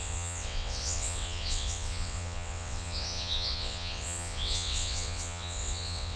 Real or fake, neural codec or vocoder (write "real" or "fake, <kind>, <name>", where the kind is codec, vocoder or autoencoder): fake, vocoder, WaveNeXt